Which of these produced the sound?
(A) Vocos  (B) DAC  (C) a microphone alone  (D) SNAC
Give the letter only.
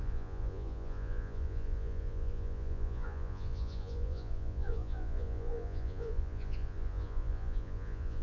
A